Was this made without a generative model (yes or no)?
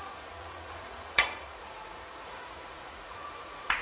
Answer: no